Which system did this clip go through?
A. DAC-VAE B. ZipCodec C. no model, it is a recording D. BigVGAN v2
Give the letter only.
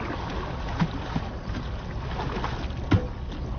C